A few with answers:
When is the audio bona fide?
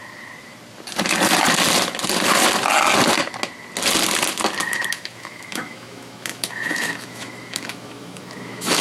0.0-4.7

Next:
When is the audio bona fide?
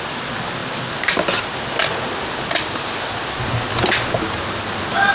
0.0-5.1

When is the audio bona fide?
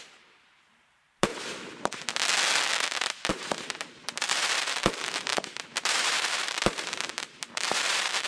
1.3-3.3